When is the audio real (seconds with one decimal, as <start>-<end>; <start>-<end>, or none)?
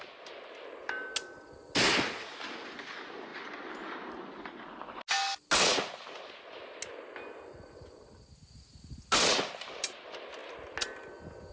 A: 0.0-11.5